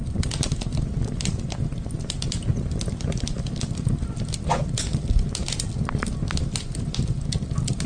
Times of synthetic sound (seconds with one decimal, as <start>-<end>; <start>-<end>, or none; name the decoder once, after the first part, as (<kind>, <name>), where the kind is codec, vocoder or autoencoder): none